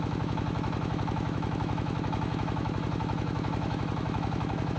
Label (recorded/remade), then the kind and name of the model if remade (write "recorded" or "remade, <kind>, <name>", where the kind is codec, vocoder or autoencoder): remade, autoencoder, DAC-VAE